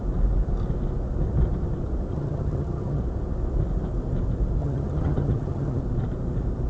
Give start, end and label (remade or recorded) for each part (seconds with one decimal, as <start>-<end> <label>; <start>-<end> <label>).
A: 0.0-2.1 recorded; 2.1-3.0 remade; 3.0-4.6 recorded; 4.6-5.8 remade; 5.8-6.7 recorded